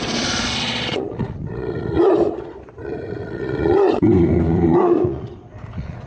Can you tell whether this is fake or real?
fake